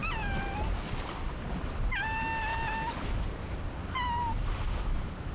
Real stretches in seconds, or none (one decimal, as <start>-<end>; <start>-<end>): 0.0-5.3